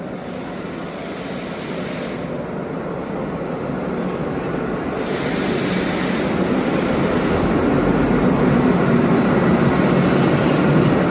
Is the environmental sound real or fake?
real